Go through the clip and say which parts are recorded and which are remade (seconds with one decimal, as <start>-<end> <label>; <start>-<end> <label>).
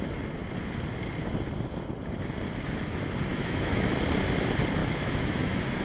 0.0-3.3 recorded; 3.3-3.9 remade; 3.9-4.8 recorded; 4.8-5.8 remade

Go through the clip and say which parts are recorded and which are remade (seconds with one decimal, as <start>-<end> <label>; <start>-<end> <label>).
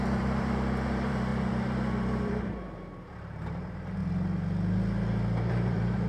0.0-4.0 remade; 4.0-5.5 recorded; 5.5-6.1 remade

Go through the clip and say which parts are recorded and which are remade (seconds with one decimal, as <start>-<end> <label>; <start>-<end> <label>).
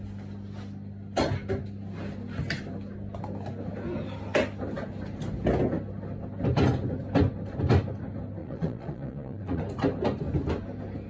0.0-8.4 recorded; 8.4-9.6 remade; 9.6-11.1 recorded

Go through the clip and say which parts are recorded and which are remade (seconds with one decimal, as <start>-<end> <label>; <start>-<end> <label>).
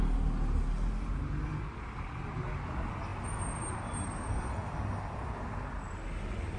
0.0-6.6 recorded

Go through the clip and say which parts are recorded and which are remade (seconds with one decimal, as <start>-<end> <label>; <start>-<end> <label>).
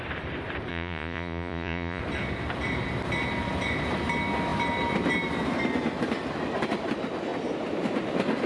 0.0-0.7 recorded; 0.7-2.0 remade; 2.0-8.5 recorded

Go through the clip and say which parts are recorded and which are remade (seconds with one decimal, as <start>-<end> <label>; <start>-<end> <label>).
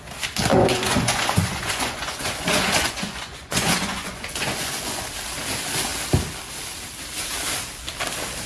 0.0-0.5 recorded; 0.5-5.1 remade; 5.1-8.5 recorded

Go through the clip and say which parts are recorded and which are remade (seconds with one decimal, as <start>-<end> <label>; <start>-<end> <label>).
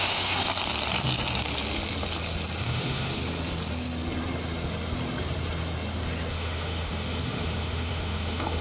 0.0-0.5 remade; 0.5-2.6 recorded; 2.6-3.2 remade; 3.2-6.3 recorded; 6.3-8.6 remade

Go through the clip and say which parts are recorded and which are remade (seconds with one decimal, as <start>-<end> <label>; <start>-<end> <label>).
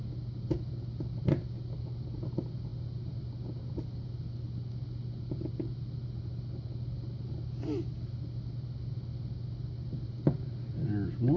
0.0-11.4 recorded